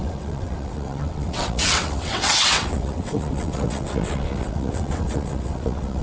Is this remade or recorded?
remade